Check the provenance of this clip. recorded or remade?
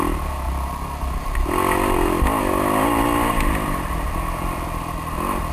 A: recorded